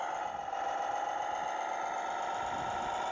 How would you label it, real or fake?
real